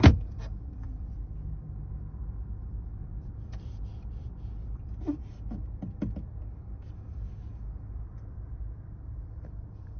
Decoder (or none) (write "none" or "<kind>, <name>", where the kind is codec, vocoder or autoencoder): vocoder, BigVGAN v2